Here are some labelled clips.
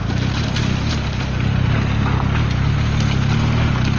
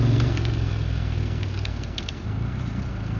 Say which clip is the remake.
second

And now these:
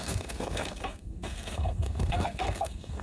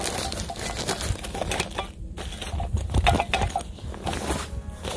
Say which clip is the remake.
first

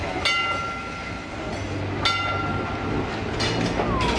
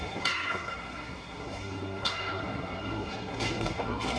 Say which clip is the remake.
second